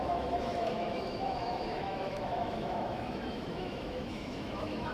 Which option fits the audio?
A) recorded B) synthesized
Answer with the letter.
B